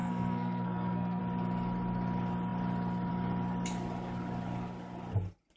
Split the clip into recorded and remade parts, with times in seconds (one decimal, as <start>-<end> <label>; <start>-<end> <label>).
0.0-1.2 remade; 1.2-5.6 recorded